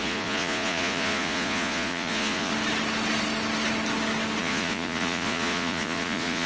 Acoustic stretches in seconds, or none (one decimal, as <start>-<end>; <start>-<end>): 2.5-4.4